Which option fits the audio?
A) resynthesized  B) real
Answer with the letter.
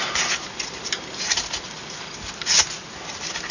B